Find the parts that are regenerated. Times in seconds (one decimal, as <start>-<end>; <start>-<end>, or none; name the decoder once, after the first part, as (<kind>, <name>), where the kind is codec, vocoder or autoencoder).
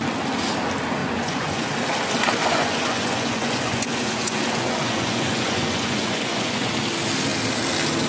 1.0-1.7 (vocoder, Vocos); 2.4-6.7